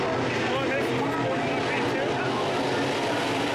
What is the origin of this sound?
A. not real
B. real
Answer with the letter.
B